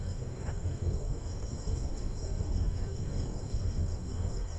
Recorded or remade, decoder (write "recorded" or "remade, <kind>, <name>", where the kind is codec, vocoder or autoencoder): remade, codec, DAC